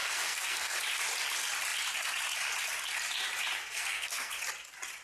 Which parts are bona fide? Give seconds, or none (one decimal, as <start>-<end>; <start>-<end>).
0.8-3.6; 4.4-5.0

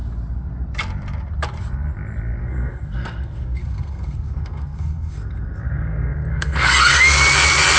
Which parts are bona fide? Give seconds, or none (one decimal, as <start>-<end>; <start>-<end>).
0.0-2.4; 7.0-7.8

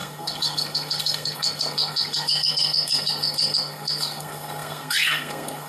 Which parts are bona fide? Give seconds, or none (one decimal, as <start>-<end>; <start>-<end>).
none

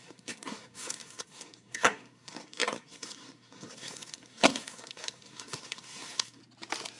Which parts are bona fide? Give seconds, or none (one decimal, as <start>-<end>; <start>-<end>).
6.4-7.0

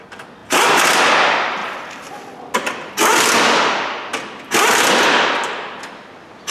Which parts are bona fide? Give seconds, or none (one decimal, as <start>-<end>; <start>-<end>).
0.0-6.5

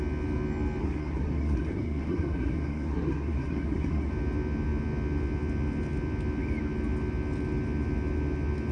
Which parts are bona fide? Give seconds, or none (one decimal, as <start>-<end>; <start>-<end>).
0.0-0.8; 4.1-8.7

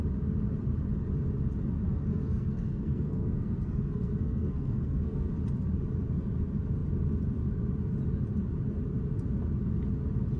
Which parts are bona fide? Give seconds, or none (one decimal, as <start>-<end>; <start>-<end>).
0.0-2.1; 5.3-10.4

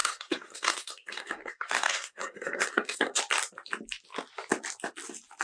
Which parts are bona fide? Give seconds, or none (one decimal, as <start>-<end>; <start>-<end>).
3.2-5.4